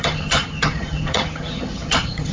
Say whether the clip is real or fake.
fake